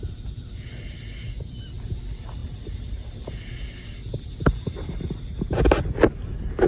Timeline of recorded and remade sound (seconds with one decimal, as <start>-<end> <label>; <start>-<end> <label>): 0.0-6.7 recorded